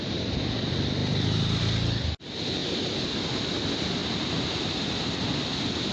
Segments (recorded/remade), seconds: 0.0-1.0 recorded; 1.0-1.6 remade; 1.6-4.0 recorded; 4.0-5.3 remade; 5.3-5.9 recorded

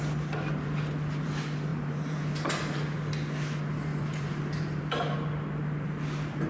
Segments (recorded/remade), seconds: 0.0-1.7 recorded; 1.7-2.2 remade; 2.2-3.9 recorded; 3.9-4.8 remade; 4.8-6.5 recorded